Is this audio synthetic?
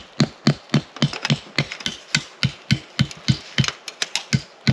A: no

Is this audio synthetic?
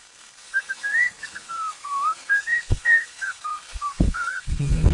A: yes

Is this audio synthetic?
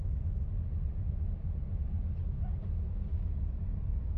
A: no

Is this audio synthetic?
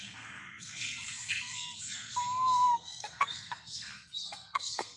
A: yes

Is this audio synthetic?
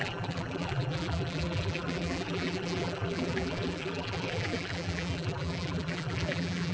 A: yes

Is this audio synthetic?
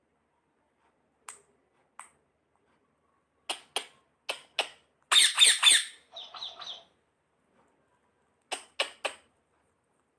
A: no